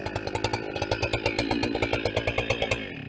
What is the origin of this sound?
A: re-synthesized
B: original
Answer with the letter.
B